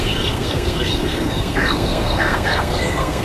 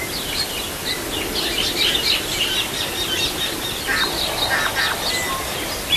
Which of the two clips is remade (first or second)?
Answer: first